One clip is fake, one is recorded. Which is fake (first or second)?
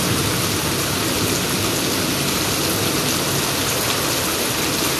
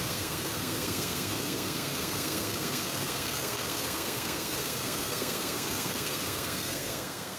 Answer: second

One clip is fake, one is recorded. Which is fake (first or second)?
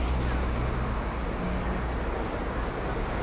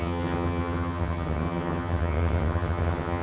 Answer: second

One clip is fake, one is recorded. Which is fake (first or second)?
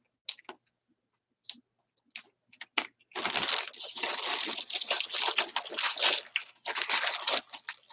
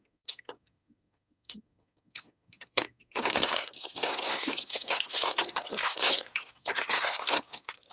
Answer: second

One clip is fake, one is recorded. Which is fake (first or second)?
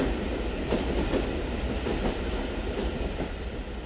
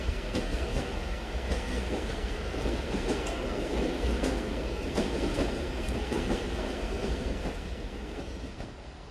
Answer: second